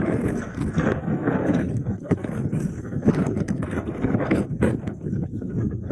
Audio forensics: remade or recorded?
remade